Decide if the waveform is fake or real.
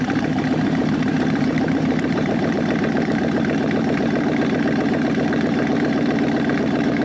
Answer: fake